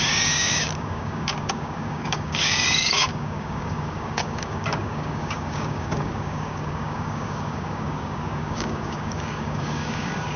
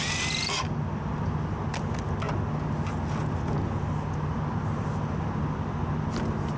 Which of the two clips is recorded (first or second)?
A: second